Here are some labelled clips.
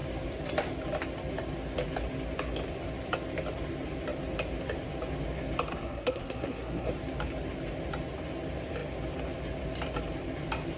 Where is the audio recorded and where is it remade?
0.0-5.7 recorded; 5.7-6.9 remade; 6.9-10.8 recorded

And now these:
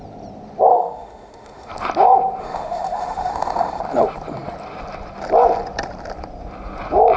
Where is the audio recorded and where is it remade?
0.0-0.7 recorded; 0.7-1.7 remade; 1.7-2.4 recorded; 2.4-3.8 remade; 3.8-7.2 recorded